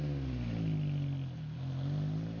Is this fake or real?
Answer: real